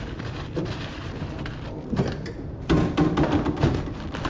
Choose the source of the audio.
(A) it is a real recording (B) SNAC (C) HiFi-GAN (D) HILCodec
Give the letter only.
A